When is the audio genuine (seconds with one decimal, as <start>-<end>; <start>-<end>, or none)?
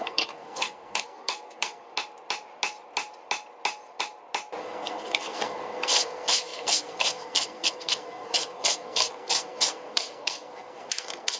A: 1.9-4.6